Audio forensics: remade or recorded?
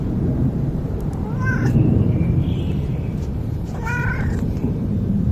remade